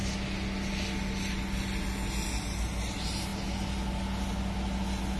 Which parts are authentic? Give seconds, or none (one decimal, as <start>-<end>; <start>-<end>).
0.0-5.2